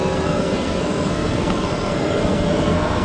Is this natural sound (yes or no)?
no